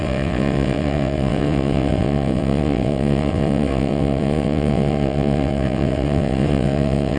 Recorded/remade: remade